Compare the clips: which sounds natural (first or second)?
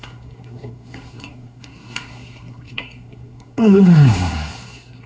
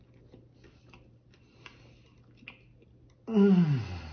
second